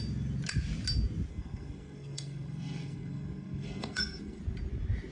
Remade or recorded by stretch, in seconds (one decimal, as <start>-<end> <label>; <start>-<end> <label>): 0.0-1.3 recorded; 1.3-4.4 remade; 4.4-5.1 recorded